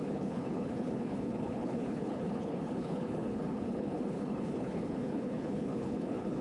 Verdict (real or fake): fake